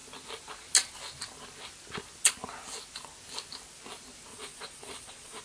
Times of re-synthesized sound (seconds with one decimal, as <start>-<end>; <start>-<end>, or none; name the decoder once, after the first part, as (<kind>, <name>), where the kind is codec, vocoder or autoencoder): 4.3-5.4 (vocoder, Vocos)